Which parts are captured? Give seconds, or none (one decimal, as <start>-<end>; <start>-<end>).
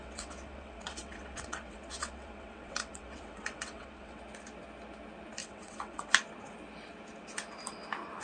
4.2-5.4; 6.1-8.2